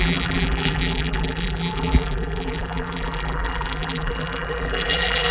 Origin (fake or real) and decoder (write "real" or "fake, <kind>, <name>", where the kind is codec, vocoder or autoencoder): fake, vocoder, BigVGAN v2